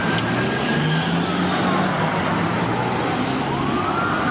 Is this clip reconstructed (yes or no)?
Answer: no